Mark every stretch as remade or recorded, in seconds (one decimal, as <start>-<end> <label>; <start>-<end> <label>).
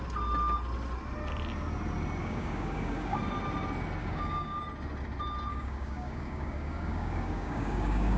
0.0-2.2 recorded; 2.2-3.2 remade; 3.2-4.0 recorded; 4.0-4.6 remade; 4.6-5.5 recorded; 5.5-8.2 remade